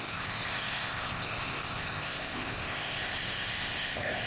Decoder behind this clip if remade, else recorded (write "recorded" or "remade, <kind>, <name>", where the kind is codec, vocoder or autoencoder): remade, codec, ZipCodec